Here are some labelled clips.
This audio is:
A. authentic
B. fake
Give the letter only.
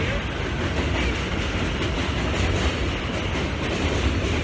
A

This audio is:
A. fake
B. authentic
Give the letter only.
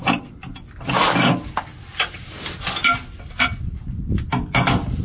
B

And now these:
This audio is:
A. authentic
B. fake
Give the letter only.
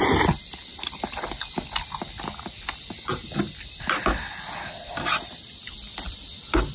A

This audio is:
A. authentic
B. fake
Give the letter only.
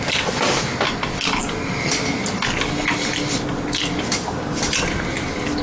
A